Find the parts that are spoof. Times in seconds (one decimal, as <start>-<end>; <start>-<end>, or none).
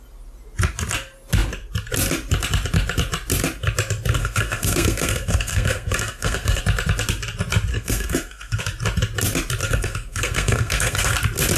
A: 4.2-6.6; 7.7-8.6; 9.6-11.1